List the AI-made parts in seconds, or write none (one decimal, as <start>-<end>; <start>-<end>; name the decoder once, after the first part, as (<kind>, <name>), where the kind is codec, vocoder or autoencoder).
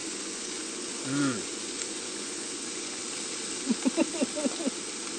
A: 0.0-3.0 (vocoder, Vocos)